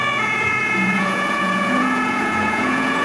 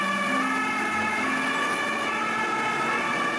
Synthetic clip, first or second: first